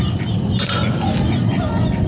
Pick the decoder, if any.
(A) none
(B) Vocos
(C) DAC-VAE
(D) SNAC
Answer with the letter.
A